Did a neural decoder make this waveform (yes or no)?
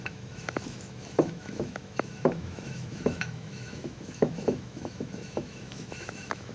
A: yes